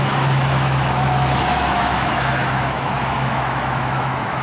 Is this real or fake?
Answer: fake